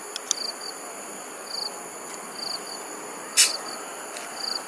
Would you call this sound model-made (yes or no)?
no